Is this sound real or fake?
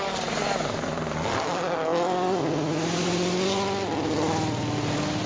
real